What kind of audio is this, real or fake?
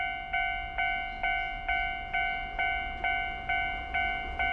real